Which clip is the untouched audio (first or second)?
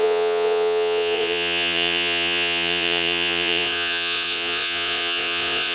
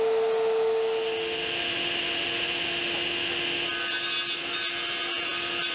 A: second